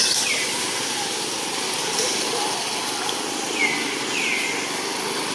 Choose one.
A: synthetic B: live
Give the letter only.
B